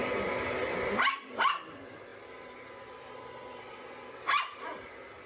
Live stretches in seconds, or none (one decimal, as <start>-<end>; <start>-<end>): none